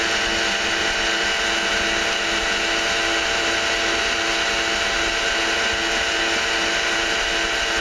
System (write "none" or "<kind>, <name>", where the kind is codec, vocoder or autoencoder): none